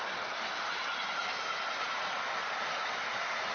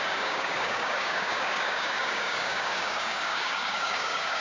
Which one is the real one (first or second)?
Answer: first